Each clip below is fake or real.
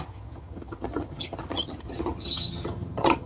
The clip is fake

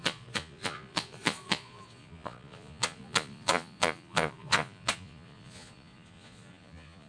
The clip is fake